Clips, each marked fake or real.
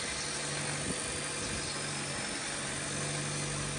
real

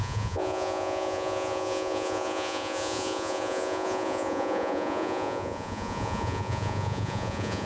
fake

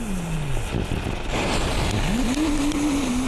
real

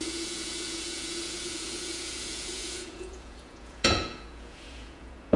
fake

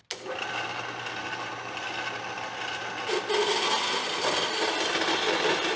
real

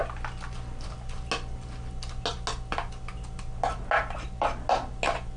real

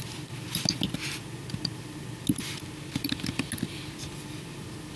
real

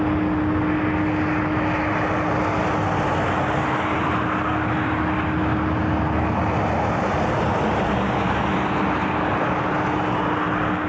real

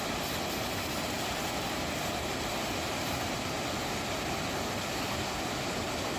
real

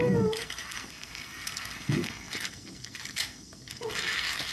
fake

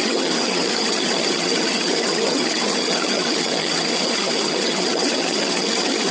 fake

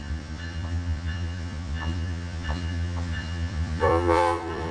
fake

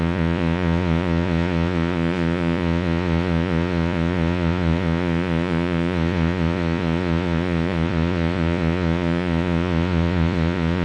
fake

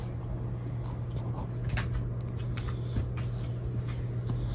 real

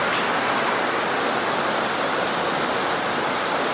real